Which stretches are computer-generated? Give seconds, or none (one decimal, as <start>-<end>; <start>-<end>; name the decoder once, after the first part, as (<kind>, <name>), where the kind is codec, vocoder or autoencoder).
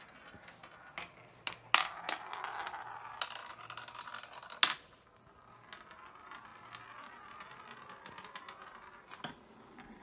none